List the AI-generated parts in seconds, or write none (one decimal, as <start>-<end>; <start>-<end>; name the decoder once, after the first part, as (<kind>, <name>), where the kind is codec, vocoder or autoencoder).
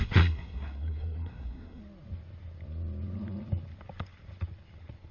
0.0-1.8 (codec, SNAC)